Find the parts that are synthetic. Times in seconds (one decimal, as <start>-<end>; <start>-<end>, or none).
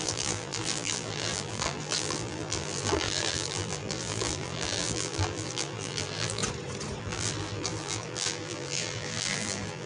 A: 0.0-6.4; 7.0-9.9